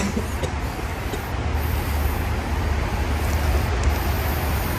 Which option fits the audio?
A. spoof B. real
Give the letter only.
B